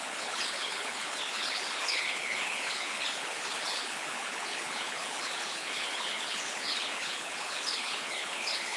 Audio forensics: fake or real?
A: fake